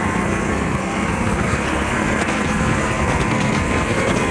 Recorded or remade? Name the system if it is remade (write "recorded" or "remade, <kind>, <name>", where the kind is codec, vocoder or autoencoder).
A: remade, codec, SNAC